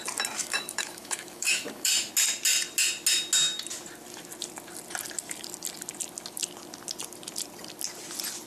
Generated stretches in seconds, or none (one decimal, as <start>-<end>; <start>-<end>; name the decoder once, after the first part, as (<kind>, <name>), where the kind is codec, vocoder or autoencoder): 0.4-2.1 (autoencoder, DAC-VAE)

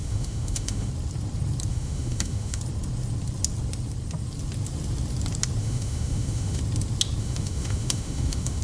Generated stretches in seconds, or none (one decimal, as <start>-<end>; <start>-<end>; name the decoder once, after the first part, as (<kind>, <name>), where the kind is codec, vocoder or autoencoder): 0.0-0.9 (autoencoder, DAC-VAE); 1.7-2.6; 5.6-6.6; 7.2-8.6

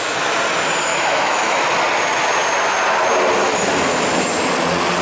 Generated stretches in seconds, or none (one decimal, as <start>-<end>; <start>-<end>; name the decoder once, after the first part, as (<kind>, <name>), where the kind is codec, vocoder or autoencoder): 0.9-1.6 (autoencoder, DAC-VAE)

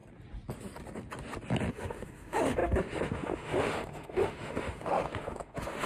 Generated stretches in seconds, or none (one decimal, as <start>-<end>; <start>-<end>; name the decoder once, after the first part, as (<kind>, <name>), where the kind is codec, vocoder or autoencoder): 1.7-5.9 (autoencoder, DAC-VAE)